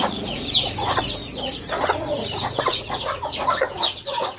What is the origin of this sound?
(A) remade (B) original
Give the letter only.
A